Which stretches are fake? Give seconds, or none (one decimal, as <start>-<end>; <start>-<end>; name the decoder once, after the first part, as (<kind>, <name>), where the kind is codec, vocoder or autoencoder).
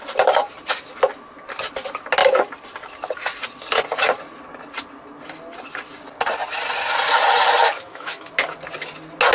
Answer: 7.6-8.3 (autoencoder, DAC-VAE)